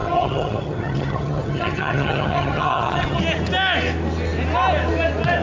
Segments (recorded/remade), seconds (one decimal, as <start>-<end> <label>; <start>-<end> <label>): 0.0-3.2 remade; 3.2-5.4 recorded